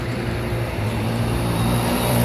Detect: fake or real fake